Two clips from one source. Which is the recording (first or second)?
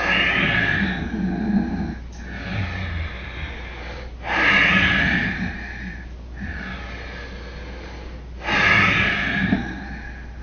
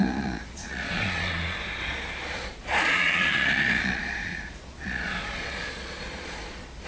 first